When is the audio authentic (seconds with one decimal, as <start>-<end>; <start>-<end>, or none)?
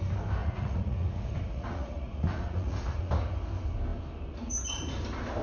0.0-0.4; 3.1-5.4